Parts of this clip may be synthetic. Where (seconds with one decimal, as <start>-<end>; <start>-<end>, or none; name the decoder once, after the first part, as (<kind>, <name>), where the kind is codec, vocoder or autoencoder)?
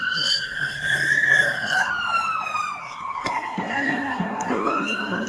0.0-1.9 (codec, SNAC); 2.8-5.3